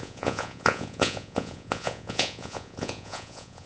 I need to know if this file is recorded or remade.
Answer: remade